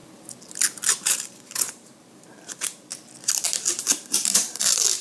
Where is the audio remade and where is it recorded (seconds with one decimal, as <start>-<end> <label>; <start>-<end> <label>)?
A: 0.0-0.9 recorded; 0.9-2.9 remade; 2.9-3.8 recorded; 3.8-5.0 remade